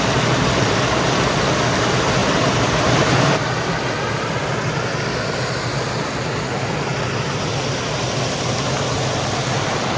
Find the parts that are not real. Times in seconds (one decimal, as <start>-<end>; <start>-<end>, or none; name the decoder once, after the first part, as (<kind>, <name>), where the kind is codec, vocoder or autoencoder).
2.2-3.9 (vocoder, BigVGAN v2)